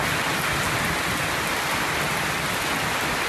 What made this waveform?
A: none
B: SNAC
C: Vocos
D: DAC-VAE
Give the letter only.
A